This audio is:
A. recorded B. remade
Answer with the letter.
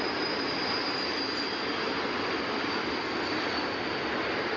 A